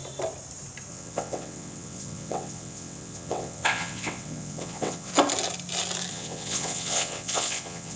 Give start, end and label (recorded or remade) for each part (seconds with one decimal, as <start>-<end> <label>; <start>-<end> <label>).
0.0-0.9 recorded; 0.9-5.1 remade; 5.1-6.1 recorded; 6.1-8.0 remade